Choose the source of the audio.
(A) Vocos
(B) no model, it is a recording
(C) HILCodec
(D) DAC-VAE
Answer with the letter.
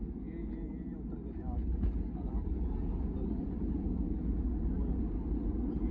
B